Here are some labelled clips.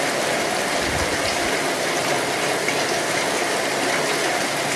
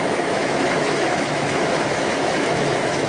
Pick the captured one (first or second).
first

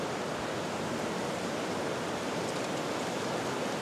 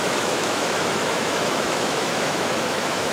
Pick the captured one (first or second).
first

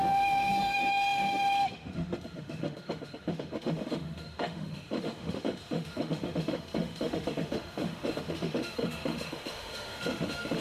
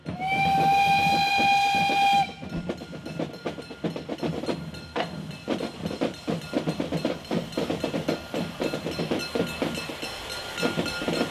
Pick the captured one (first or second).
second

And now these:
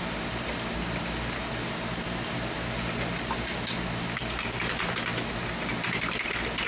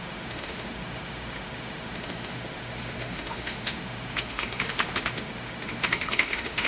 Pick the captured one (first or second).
first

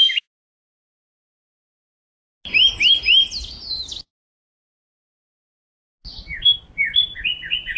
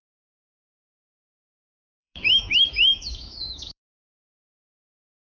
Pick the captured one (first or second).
first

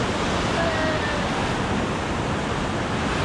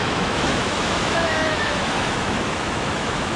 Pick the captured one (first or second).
first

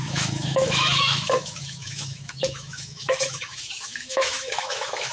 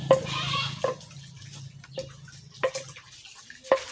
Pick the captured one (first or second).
second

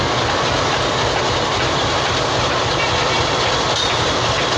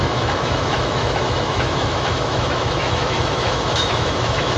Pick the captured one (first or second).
first